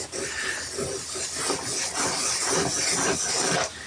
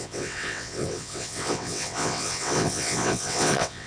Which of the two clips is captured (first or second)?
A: first